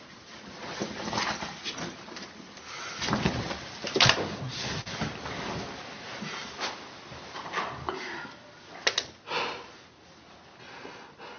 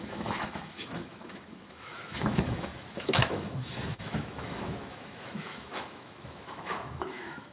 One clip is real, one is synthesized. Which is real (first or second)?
first